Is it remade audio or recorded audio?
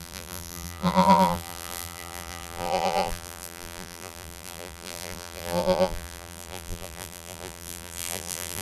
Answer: remade